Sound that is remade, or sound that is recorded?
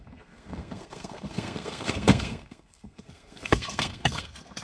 remade